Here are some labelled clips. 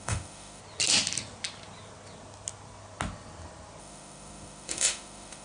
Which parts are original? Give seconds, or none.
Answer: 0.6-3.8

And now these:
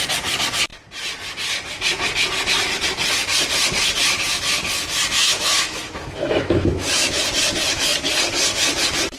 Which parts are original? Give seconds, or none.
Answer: 0.0-5.2; 7.2-9.2

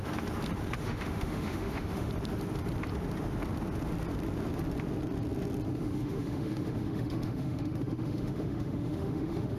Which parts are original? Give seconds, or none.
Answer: 0.0-0.8; 2.1-5.7

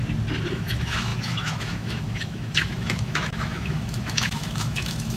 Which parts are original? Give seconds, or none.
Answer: 0.0-0.5